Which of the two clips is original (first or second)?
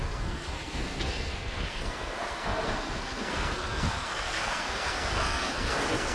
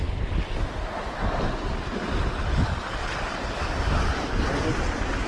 second